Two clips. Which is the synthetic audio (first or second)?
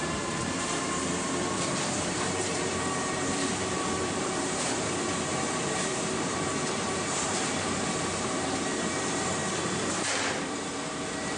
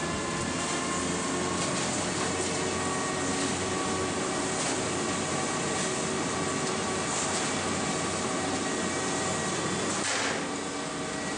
first